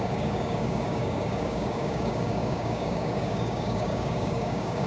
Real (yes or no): no